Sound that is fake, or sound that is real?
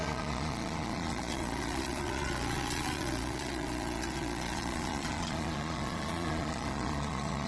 fake